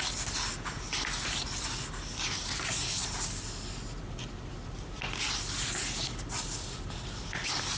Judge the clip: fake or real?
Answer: real